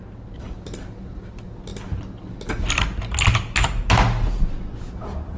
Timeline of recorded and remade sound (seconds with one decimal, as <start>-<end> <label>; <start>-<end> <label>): 0.0-5.4 recorded